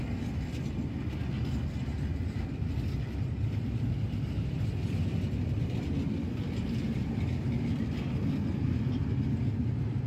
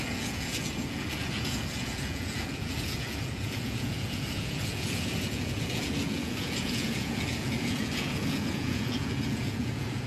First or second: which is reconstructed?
second